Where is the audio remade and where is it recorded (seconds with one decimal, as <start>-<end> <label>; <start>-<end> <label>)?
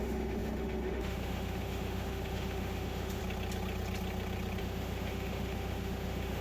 0.0-3.2 remade; 3.2-4.6 recorded; 4.6-6.4 remade